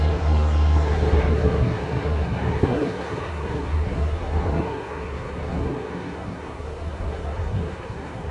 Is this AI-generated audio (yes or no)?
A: yes